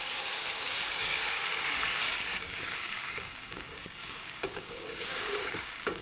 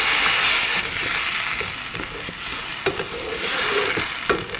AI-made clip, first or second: first